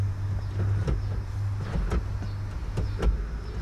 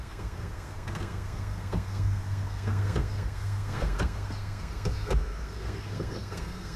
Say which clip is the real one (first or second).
first